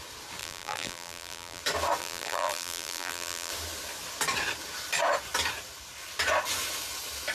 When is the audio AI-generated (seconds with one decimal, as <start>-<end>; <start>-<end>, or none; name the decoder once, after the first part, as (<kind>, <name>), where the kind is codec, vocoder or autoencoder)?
0.4-1.6 (vocoder, BigVGAN v2); 2.0-3.5